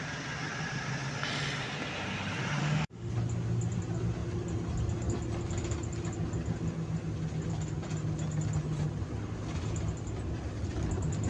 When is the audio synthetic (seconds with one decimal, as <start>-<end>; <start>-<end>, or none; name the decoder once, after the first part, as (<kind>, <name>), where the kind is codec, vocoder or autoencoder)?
2.6-3.1 (autoencoder, DAC-VAE)